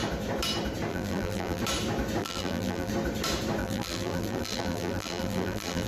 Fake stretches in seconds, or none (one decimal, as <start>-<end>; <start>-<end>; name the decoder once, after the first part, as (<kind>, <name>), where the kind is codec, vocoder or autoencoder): 0.9-1.6 (vocoder, BigVGAN v2); 2.2-2.9; 3.6-5.9